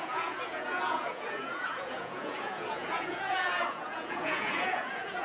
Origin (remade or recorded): remade